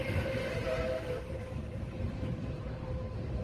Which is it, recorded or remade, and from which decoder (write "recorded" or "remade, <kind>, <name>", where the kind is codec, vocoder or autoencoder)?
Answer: recorded